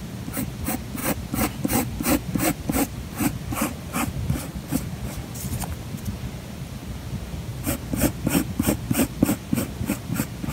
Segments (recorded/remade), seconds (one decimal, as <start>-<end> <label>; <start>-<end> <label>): 0.0-1.0 recorded; 1.0-5.9 remade; 5.9-7.5 recorded; 7.5-10.5 remade